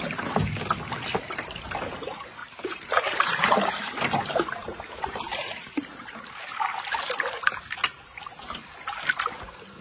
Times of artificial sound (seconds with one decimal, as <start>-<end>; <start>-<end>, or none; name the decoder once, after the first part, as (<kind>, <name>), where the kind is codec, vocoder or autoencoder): 2.4-3.5 (vocoder, BigVGAN v2); 4.6-5.8